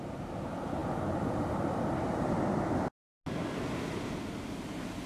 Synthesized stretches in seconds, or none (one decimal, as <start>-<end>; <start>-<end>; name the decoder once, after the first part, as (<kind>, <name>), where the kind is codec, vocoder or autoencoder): none